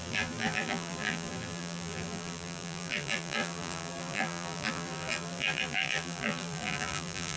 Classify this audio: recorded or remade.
remade